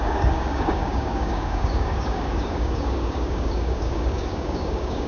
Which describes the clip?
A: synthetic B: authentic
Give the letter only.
A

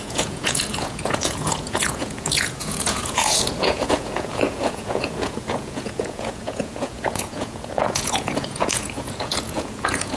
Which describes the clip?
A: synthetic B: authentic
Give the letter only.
A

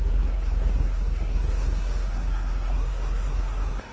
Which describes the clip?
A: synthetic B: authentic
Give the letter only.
A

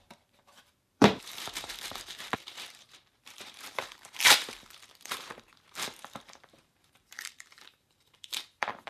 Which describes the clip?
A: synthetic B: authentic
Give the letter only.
A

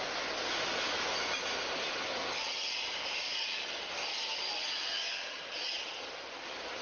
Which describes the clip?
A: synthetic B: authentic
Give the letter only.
B